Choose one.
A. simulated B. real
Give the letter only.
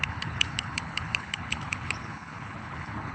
A